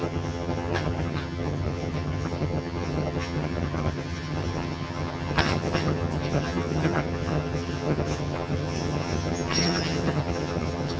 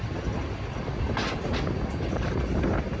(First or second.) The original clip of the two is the second